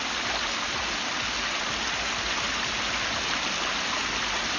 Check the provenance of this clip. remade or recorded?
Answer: recorded